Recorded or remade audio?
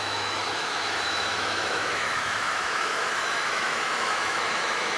remade